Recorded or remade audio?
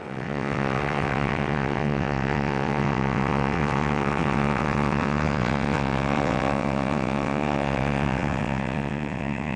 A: remade